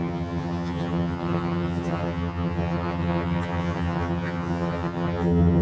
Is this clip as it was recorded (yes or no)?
no